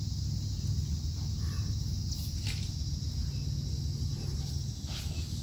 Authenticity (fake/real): real